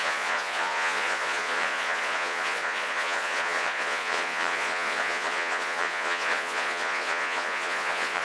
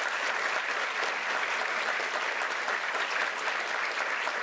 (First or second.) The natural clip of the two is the second